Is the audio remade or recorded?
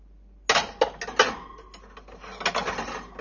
recorded